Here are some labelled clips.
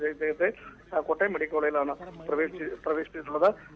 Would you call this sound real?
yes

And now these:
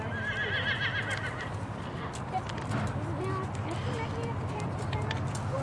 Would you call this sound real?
yes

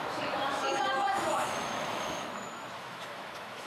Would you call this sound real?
no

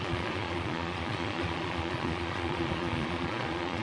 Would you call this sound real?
no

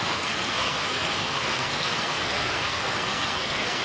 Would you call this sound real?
no